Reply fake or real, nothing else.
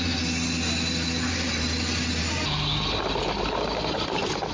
real